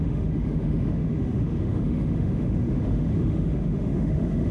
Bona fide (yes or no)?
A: no